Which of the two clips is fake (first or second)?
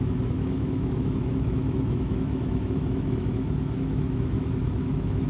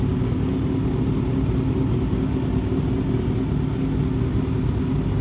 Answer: first